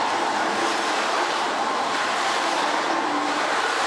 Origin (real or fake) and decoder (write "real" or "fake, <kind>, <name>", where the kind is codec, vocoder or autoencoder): fake, vocoder, BigVGAN v2